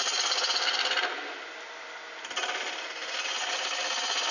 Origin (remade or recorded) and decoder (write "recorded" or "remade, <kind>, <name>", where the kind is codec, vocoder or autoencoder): recorded